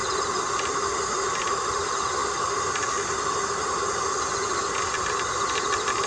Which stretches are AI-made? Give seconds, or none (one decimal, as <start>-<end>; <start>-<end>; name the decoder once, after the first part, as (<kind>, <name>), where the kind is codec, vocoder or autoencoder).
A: none